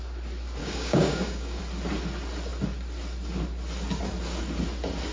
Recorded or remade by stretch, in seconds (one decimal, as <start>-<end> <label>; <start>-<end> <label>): 0.0-0.6 recorded; 0.6-1.6 remade; 1.6-5.1 recorded